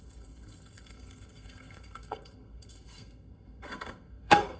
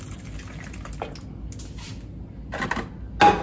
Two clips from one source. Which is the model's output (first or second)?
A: first